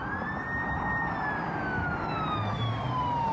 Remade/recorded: recorded